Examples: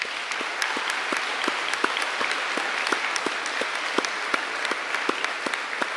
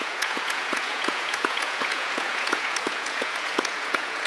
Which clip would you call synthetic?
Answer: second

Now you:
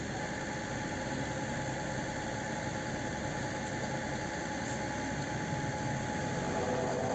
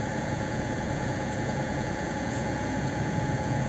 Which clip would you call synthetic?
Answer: second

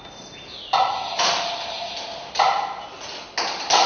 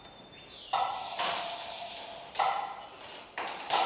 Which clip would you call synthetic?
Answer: second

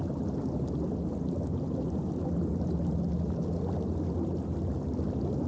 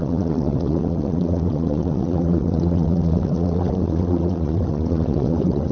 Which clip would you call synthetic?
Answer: second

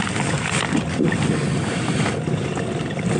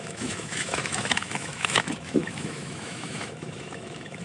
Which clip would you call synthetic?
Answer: second